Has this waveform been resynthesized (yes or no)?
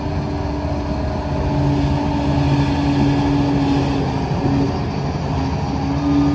no